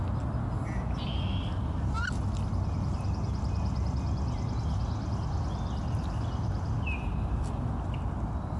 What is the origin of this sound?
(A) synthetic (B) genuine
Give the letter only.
B